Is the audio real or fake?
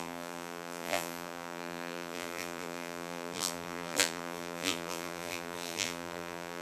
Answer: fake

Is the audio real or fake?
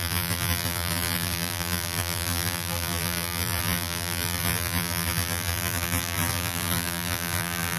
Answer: fake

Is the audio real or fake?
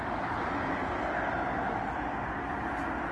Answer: real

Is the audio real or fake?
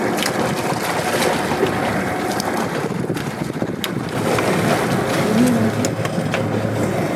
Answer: real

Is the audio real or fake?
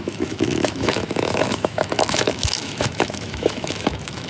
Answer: fake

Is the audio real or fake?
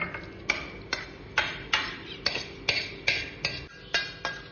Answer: real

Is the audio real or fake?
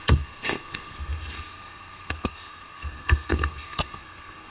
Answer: fake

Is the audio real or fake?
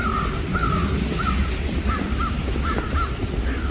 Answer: real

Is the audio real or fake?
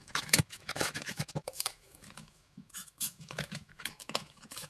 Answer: fake